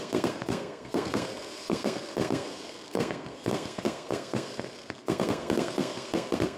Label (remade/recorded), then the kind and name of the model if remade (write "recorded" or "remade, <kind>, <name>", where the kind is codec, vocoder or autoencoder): remade, codec, SNAC